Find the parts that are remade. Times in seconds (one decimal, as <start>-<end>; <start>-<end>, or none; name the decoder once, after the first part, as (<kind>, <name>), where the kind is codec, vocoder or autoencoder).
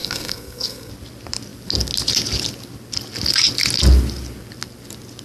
0.0-0.9 (codec, SNAC)